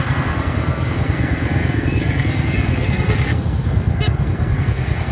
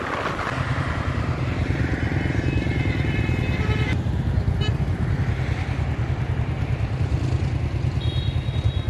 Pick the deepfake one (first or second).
first